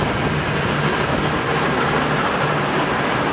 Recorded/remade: recorded